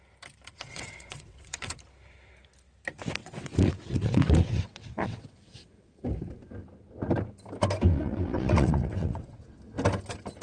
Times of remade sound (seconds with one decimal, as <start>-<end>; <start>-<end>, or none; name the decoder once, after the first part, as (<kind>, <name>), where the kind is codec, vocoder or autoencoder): 0.5-1.8 (vocoder, WaveNeXt); 3.2-5.9; 7.9-9.6